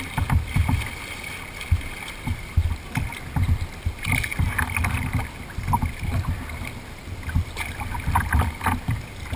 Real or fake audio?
real